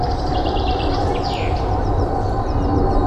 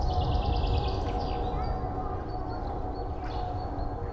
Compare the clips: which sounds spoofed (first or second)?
first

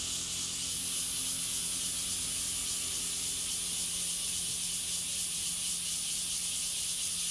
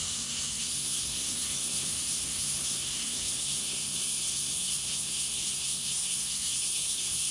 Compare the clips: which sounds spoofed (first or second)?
second